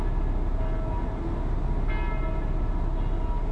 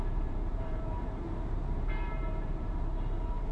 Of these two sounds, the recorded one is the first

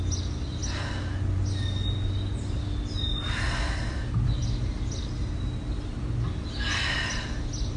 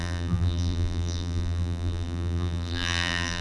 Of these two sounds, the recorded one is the first